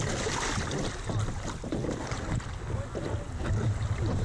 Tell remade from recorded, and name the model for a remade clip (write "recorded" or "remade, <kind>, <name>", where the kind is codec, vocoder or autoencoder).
recorded